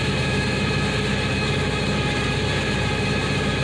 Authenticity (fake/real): fake